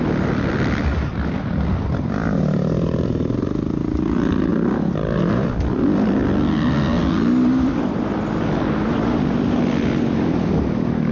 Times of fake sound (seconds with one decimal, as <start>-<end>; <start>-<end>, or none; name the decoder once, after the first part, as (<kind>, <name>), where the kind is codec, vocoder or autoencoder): none